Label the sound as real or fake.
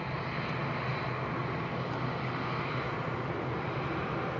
real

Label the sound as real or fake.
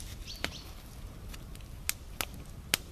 real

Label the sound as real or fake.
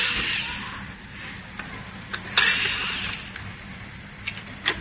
real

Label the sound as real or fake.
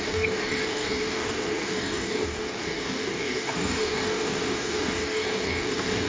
fake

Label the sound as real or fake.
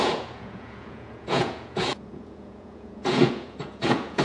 fake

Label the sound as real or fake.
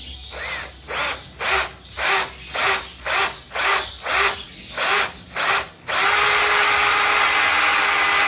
real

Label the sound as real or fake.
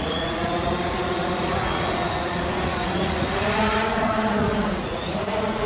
fake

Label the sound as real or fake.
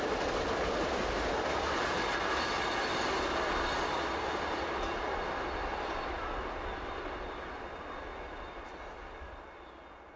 real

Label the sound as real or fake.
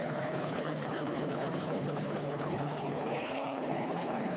fake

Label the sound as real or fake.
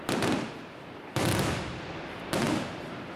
fake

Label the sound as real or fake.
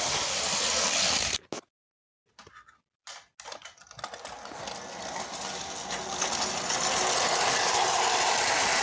real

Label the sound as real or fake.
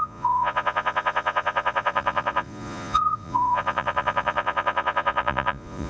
fake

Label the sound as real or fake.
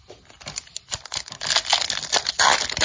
real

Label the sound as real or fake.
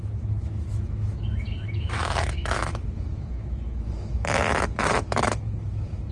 fake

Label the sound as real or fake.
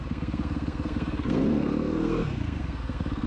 fake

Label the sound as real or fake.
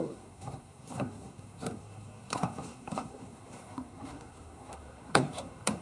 fake